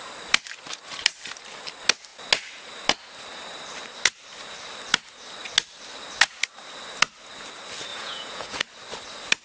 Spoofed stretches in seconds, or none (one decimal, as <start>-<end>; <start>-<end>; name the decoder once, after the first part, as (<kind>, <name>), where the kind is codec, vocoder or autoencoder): 7.9-8.6 (vocoder, Vocos)